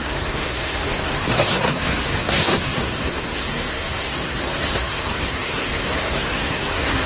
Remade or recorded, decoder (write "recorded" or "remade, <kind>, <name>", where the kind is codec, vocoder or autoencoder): remade, codec, SNAC